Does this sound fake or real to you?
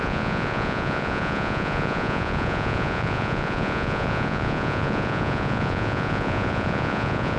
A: fake